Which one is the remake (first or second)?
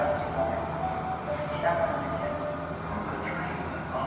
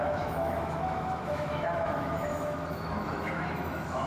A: second